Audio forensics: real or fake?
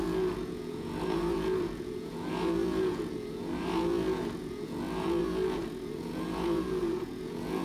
fake